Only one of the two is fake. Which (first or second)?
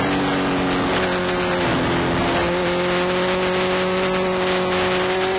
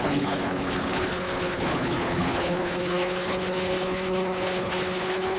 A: second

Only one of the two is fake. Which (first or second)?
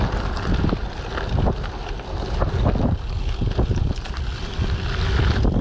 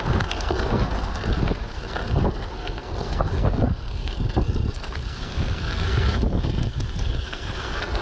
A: second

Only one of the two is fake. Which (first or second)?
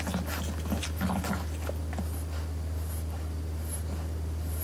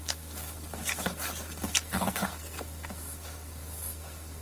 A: second